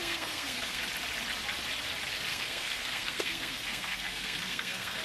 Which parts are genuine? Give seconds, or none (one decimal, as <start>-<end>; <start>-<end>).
0.8-2.3